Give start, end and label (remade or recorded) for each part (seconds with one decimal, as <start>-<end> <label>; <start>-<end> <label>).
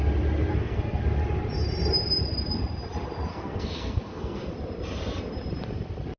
0.0-0.5 recorded; 0.5-1.0 remade; 1.0-3.3 recorded; 3.3-4.5 remade; 4.5-6.2 recorded